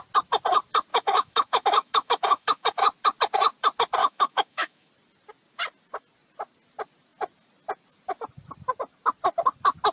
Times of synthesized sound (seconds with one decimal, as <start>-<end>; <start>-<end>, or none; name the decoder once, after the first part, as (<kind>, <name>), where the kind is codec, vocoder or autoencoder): 0.9-2.8 (autoencoder, DAC-VAE); 4.0-4.9